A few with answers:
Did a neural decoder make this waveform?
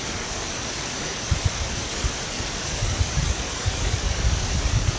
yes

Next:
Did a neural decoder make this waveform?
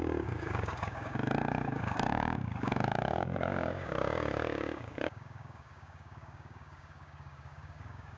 yes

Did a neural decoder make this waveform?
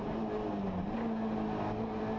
no